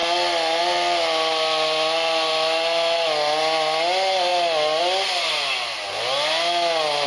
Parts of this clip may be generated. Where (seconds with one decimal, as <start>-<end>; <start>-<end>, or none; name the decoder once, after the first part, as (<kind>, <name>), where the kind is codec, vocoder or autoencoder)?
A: none